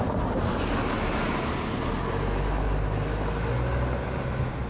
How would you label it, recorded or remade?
recorded